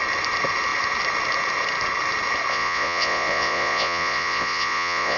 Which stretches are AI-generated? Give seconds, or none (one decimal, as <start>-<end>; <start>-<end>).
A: 2.5-5.2